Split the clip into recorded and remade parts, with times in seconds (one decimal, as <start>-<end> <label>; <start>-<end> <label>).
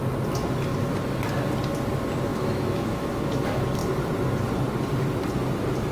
0.0-2.3 recorded; 2.3-3.1 remade; 3.1-5.9 recorded